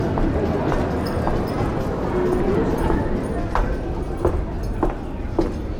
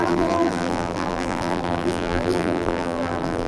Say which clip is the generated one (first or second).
second